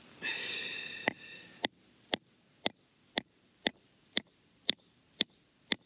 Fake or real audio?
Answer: fake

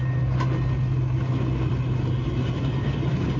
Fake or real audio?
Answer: real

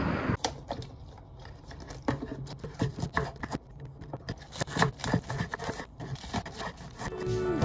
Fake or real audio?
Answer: real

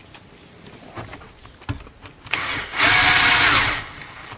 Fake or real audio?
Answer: real